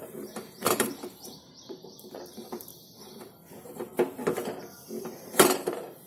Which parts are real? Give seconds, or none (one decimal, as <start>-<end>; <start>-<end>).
2.7-5.0